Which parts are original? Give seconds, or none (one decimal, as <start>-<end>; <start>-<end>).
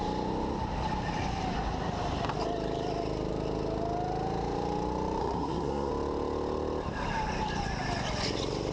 0.0-5.2; 5.9-8.7